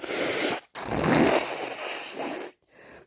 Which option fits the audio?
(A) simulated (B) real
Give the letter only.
B